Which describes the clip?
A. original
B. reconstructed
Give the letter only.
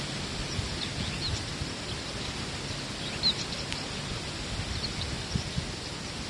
A